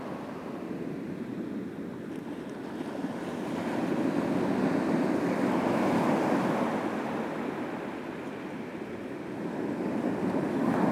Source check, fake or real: real